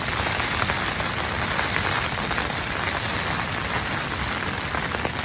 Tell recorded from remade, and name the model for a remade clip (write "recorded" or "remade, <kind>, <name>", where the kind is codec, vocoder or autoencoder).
recorded